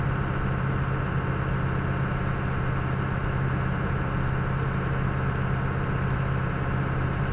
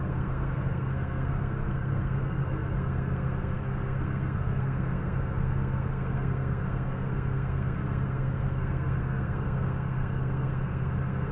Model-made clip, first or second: second